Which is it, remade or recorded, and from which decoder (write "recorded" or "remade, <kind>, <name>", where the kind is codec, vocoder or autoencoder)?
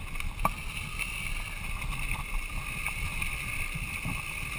recorded